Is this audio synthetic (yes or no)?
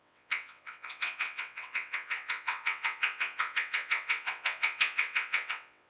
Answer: yes